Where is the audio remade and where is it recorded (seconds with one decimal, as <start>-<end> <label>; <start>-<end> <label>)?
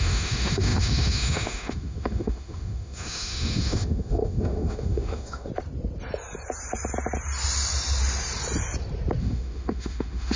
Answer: 0.0-5.5 remade; 5.5-9.2 recorded; 9.2-10.4 remade